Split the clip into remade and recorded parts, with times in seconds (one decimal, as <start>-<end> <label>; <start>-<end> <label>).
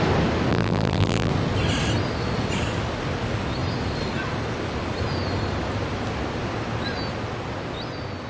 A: 0.0-0.5 recorded; 0.5-1.3 remade; 1.3-8.3 recorded